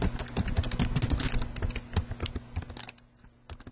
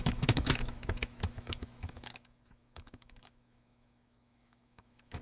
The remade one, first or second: second